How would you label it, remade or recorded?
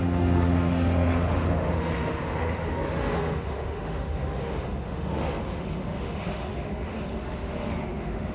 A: remade